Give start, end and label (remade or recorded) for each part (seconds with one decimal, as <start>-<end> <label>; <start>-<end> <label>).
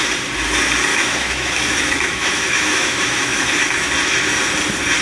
0.0-0.9 recorded; 0.9-3.9 remade; 3.9-5.0 recorded